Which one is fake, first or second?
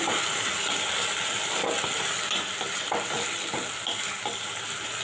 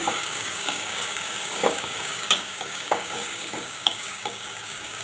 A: second